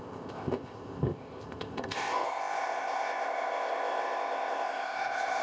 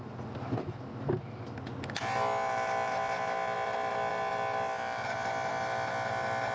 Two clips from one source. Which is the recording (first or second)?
second